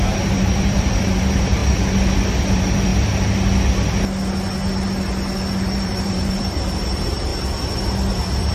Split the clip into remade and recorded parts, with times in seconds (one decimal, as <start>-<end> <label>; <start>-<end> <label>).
0.0-1.6 remade; 1.6-2.5 recorded; 2.5-2.9 remade; 2.9-5.6 recorded; 5.6-7.3 remade; 7.3-8.1 recorded; 8.1-8.5 remade